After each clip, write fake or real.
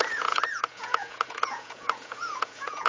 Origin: fake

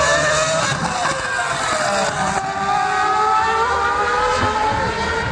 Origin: real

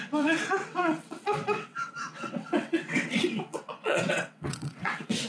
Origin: fake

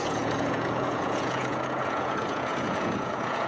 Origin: fake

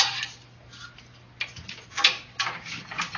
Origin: real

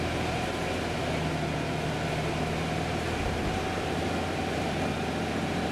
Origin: real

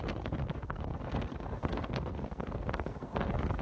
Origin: fake